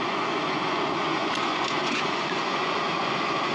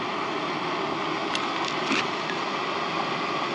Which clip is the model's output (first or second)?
first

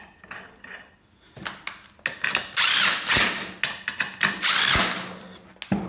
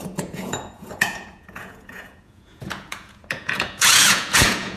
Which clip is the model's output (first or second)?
second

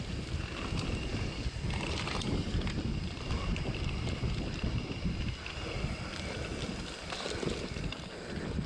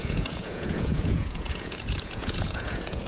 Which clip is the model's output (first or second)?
second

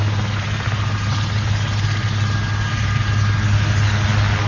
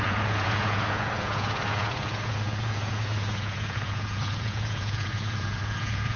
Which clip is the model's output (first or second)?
second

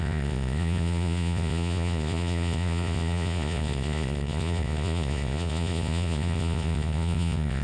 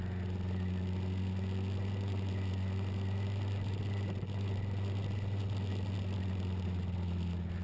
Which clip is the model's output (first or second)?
first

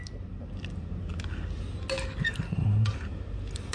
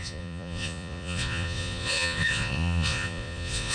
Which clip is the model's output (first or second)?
second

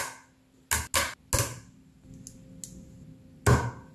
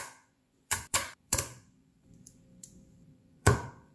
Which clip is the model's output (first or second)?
second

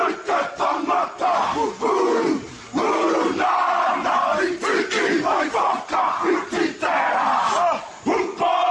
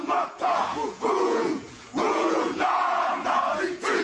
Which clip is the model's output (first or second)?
second